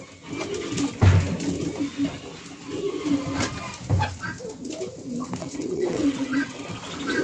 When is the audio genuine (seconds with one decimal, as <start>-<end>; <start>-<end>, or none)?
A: 0.0-5.4; 6.6-7.2